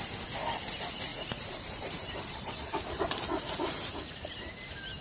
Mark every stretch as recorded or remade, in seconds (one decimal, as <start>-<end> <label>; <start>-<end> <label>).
0.0-1.1 recorded; 1.1-2.8 remade; 2.8-5.0 recorded

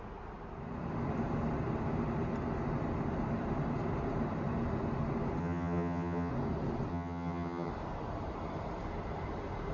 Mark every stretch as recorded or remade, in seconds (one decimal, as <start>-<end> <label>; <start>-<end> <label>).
0.0-5.4 recorded; 5.4-6.3 remade; 6.3-6.9 recorded; 6.9-7.7 remade; 7.7-9.7 recorded

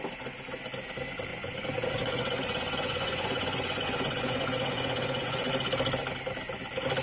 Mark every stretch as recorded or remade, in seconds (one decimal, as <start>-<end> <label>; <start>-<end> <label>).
0.0-1.3 recorded; 1.3-5.5 remade; 5.5-7.0 recorded

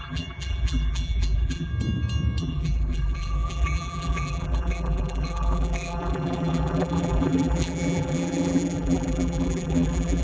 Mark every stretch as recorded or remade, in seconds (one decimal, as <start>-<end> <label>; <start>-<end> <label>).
0.0-1.7 remade; 1.7-2.4 recorded; 2.4-10.2 remade

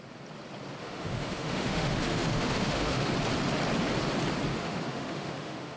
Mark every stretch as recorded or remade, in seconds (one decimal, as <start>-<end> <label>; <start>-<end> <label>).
0.0-0.8 recorded; 0.8-3.1 remade; 3.1-4.5 recorded; 4.5-5.8 remade